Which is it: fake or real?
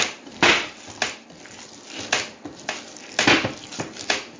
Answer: real